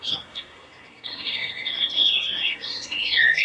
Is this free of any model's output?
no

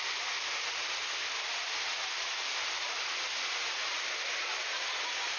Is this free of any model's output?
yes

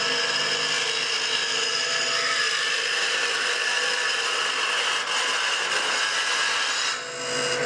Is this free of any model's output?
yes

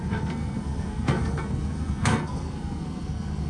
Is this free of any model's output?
no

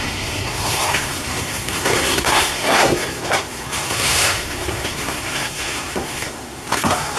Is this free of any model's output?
no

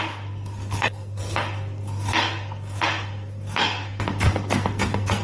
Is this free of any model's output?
no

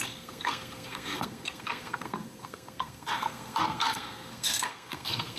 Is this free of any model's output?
no